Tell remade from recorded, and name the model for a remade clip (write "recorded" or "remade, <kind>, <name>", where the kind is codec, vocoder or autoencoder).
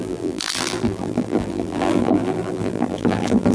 remade, vocoder, BigVGAN v2